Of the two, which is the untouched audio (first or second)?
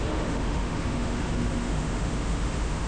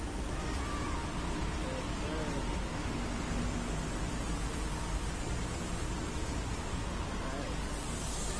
second